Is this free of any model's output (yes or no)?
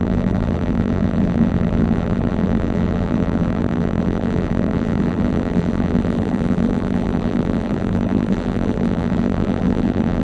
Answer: no